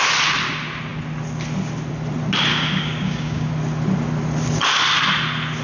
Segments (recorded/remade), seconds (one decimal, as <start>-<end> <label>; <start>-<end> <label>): 0.0-2.5 recorded; 2.5-3.5 remade; 3.5-5.6 recorded